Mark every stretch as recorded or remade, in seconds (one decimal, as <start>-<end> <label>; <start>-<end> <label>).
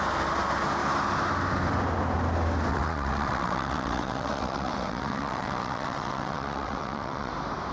0.0-2.7 recorded; 2.7-7.3 remade; 7.3-7.7 recorded